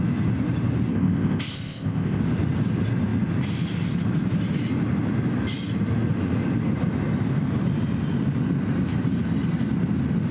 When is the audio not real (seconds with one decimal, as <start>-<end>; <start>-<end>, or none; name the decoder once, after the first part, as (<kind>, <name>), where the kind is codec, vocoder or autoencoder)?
0.9-2.2 (codec, ZipCodec)